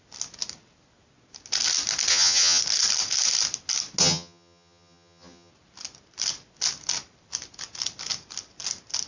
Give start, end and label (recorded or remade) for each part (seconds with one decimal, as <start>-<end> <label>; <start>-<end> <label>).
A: 0.0-2.1 recorded; 2.1-2.6 remade; 2.6-4.0 recorded; 4.0-5.5 remade; 5.5-9.1 recorded